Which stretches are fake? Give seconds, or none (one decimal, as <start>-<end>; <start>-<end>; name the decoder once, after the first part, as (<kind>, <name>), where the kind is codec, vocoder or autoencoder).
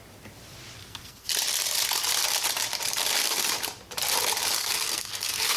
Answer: 0.8-1.3 (codec, SNAC); 4.6-5.6